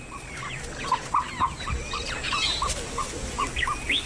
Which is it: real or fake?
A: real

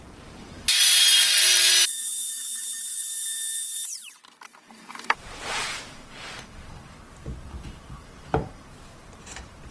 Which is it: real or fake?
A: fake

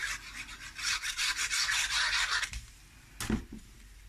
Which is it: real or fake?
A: real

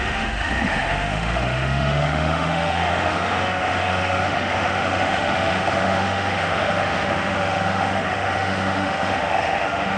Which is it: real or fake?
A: fake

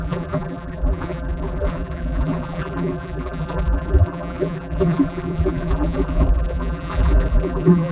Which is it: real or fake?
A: fake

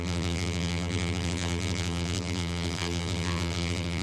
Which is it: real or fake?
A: fake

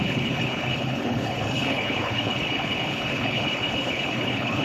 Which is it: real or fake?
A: fake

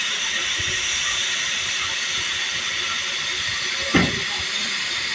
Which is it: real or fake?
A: real